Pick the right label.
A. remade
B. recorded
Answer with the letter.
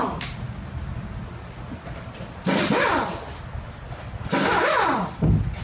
B